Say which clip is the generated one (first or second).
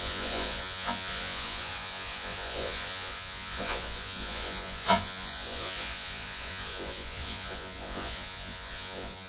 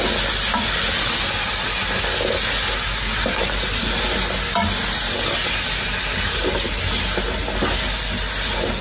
first